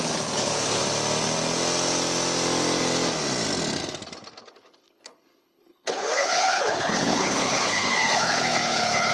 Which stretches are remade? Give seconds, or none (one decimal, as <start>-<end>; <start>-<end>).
0.0-0.8; 4.5-9.1